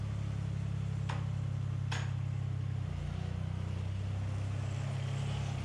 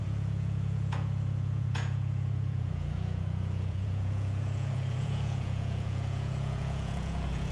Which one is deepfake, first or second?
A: second